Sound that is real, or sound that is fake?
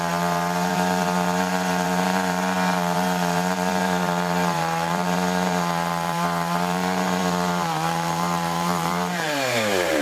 fake